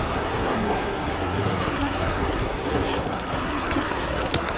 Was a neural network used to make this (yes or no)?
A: yes